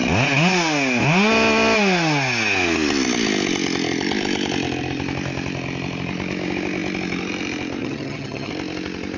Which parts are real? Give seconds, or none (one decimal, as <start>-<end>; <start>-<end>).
0.0-7.8; 8.5-9.2